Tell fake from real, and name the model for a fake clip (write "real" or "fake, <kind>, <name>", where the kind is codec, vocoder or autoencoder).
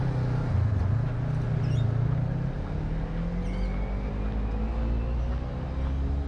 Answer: real